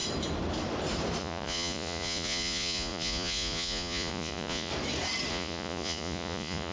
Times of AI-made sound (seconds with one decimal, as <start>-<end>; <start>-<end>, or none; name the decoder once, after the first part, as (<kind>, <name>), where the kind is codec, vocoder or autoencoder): 1.2-4.7 (vocoder, Vocos); 5.3-6.7